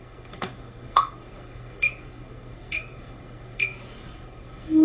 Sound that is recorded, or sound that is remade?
remade